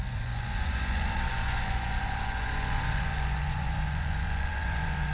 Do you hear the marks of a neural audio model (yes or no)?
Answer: yes